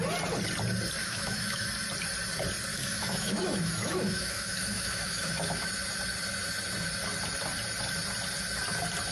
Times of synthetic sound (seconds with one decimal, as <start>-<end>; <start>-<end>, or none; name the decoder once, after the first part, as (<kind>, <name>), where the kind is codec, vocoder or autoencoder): 1.0-1.7 (autoencoder, DAC-VAE); 2.7-5.7